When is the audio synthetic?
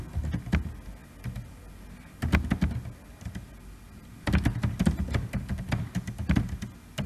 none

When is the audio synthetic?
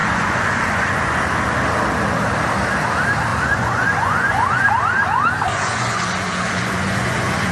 0.0-1.2 (vocoder, Vocos); 3.3-4.7; 5.5-7.5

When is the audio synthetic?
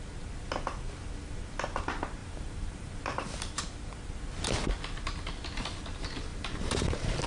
2.2-3.6 (vocoder, BigVGAN v2); 6.3-7.3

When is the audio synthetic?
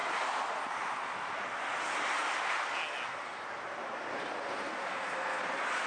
4.9-5.4 (codec, SNAC)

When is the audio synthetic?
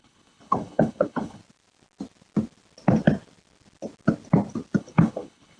0.0-1.4 (codec, HILCodec); 4.8-5.6